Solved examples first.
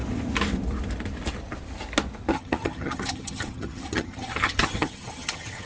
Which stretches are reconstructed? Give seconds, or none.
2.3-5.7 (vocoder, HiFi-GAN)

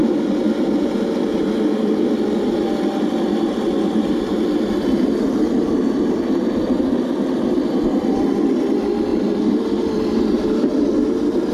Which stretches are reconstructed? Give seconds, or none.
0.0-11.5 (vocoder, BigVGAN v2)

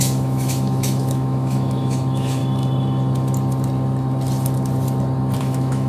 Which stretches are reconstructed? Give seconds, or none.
0.0-2.4 (autoencoder, DAC-VAE); 5.4-5.9

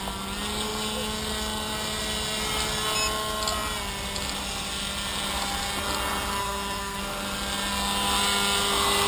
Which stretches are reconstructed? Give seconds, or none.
6.4-7.0 (codec, SNAC)

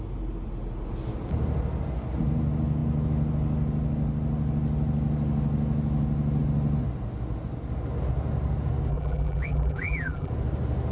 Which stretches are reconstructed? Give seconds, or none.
8.9-10.3 (vocoder, BigVGAN v2)